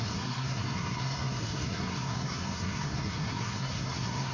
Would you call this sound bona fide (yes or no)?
no